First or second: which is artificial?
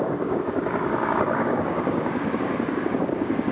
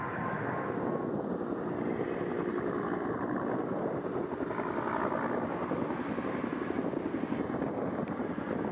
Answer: first